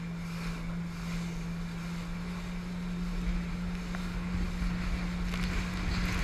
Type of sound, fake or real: real